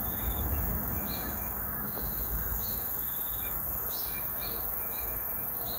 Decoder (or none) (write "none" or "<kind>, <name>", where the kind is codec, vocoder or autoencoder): autoencoder, DAC-VAE